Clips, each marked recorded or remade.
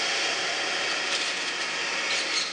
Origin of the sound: remade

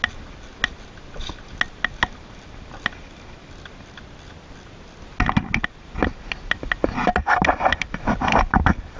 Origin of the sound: recorded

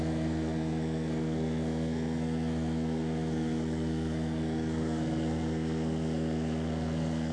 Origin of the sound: remade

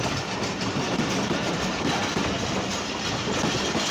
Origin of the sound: recorded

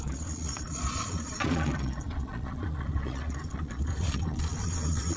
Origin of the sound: remade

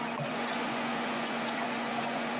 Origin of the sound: remade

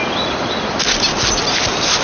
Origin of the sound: recorded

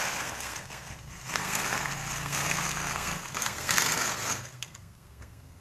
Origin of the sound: remade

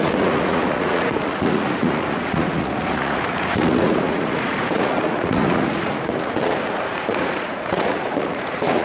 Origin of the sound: remade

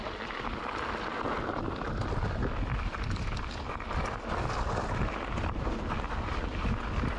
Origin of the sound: recorded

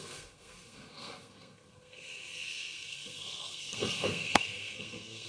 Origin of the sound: remade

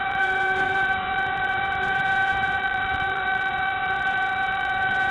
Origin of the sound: remade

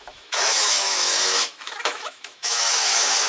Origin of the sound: remade